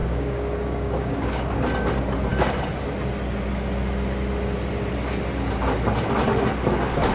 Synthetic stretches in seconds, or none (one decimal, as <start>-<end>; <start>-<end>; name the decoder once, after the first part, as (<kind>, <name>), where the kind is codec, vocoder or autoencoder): 0.0-1.6 (codec, DAC)